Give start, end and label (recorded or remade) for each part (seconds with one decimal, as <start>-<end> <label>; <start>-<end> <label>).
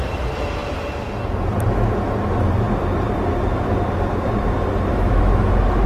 0.0-4.9 recorded; 4.9-5.5 remade; 5.5-5.9 recorded